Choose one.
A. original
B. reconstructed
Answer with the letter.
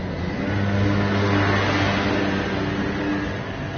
A